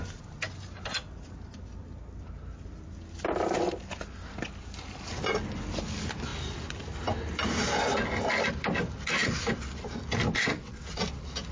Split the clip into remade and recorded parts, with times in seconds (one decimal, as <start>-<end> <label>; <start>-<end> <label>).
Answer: 0.0-10.5 recorded; 10.5-11.0 remade; 11.0-11.5 recorded